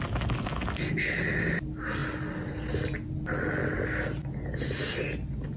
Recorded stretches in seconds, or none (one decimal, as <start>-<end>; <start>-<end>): 0.0-5.6